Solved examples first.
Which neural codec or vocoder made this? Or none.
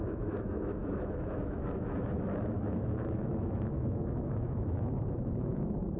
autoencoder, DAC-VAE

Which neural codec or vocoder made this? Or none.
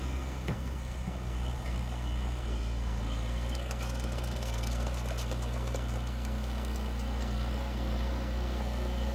codec, SNAC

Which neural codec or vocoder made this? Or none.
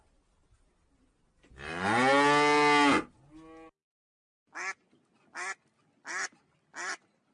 none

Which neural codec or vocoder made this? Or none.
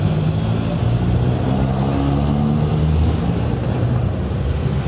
none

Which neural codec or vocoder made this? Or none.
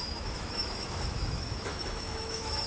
autoencoder, DAC-VAE